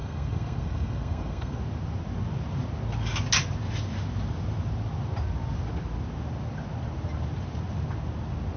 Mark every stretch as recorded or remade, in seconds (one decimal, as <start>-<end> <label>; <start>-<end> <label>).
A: 0.0-1.6 remade; 1.6-8.6 recorded